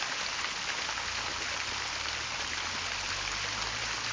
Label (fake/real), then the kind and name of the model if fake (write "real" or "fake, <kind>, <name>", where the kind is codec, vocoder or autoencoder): real